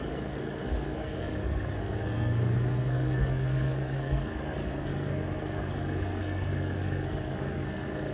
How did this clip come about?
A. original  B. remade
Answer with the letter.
B